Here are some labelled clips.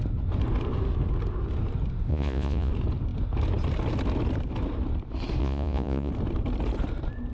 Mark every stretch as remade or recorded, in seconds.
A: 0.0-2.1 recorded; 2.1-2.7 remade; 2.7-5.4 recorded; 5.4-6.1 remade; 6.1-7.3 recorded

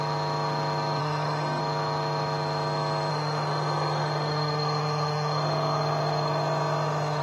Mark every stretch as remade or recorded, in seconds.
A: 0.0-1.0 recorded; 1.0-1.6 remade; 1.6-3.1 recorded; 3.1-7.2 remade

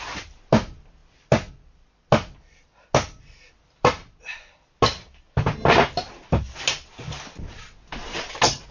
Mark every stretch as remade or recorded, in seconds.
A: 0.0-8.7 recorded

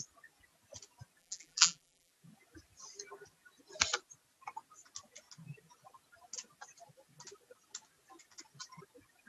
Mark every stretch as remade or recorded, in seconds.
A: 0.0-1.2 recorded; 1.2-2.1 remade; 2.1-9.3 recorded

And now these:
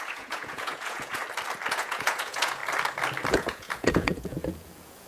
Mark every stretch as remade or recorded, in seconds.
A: 0.0-1.2 remade; 1.2-1.7 recorded; 1.7-2.6 remade; 2.6-3.3 recorded; 3.3-5.1 remade

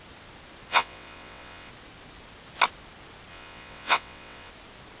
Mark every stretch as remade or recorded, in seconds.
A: 0.0-0.7 recorded; 0.7-1.7 remade; 1.7-3.3 recorded; 3.3-4.5 remade; 4.5-5.0 recorded

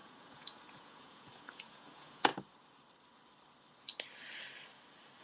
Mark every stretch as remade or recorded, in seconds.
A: 0.0-2.3 remade; 2.3-5.2 recorded